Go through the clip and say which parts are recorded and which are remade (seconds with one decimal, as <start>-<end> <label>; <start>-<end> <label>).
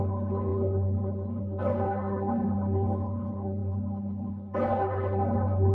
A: 0.0-5.7 remade